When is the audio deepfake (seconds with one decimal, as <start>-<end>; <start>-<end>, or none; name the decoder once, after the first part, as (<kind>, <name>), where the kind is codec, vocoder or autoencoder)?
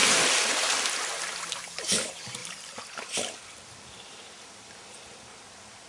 2.4-5.9 (vocoder, BigVGAN v2)